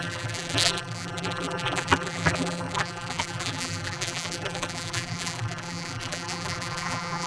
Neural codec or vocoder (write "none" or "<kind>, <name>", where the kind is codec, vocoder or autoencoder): vocoder, BigVGAN v2